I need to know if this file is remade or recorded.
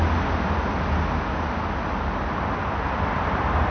recorded